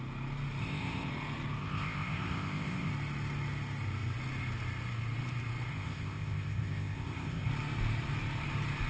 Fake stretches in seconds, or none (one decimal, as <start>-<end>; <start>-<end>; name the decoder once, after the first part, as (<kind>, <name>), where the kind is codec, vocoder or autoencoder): 0.6-1.1 (codec, ZipCodec); 1.6-2.9; 5.7-7.5

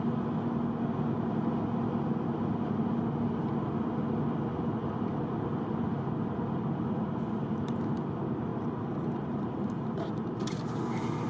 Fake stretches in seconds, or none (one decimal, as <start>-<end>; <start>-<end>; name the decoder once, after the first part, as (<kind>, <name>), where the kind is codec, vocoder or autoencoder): 4.8-6.1 (vocoder, BigVGAN v2); 8.5-10.4

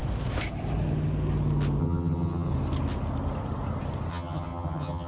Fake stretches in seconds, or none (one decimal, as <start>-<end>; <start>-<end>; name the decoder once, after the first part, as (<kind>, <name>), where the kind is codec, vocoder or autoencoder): 1.8-2.5 (vocoder, HiFi-GAN); 4.1-5.1

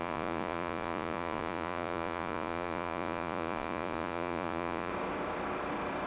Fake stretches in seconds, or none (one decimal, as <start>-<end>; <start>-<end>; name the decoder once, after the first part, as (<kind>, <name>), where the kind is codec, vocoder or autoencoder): 0.0-4.9 (vocoder, Vocos)